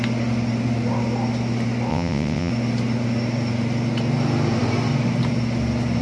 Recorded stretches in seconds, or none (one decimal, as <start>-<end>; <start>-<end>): 0.0-1.9; 2.5-6.0